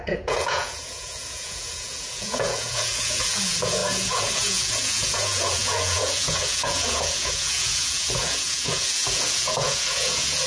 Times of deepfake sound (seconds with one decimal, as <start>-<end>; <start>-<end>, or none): 0.0-10.5